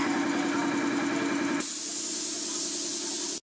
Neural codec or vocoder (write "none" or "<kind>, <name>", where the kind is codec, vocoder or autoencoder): none